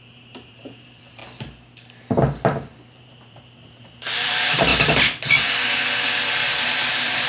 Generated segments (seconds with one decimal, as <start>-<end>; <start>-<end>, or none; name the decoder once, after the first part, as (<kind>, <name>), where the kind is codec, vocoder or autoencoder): 0.0-1.2 (vocoder, BigVGAN v2); 2.8-4.7; 6.3-7.3